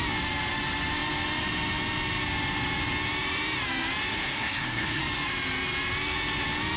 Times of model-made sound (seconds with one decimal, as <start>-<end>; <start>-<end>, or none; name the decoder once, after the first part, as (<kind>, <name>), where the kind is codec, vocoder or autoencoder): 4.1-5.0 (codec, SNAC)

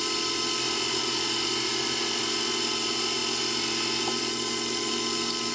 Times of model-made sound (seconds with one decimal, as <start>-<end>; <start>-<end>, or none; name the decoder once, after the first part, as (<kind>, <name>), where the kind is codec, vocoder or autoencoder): none

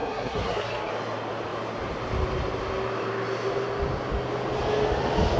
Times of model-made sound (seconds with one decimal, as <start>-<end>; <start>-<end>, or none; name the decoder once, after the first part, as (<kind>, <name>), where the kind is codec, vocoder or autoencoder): 0.0-0.9 (codec, SNAC)

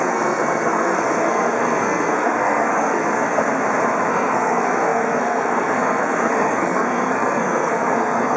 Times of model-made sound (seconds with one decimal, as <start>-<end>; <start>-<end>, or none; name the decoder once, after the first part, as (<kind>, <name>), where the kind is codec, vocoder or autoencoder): 0.0-3.4 (codec, SNAC); 4.1-8.4

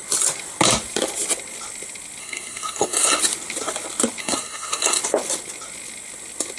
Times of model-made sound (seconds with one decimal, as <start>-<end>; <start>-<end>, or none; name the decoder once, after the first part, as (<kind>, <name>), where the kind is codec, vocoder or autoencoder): 2.2-3.2 (codec, SNAC); 4.2-5.0